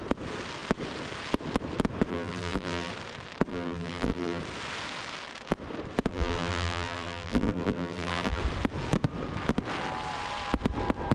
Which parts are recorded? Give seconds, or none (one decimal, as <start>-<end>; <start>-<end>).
0.0-2.1; 2.9-3.5; 4.4-6.1; 8.4-11.1